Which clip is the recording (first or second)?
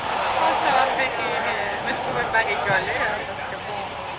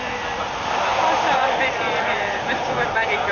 first